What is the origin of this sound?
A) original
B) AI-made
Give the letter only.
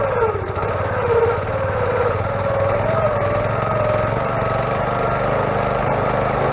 A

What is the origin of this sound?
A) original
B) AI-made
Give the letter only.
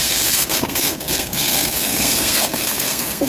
B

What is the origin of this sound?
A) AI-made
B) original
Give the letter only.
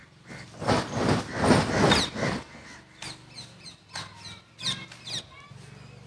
B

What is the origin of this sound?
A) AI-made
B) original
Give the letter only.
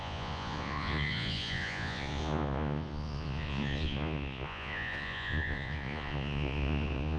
A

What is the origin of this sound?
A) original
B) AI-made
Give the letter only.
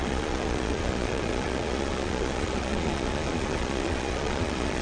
B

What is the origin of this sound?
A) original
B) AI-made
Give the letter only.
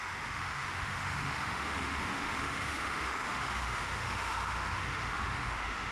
B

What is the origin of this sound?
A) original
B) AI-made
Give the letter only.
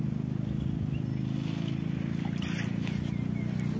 A